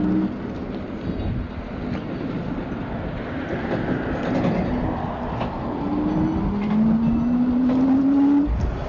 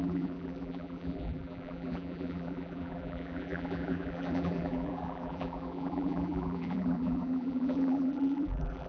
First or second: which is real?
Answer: first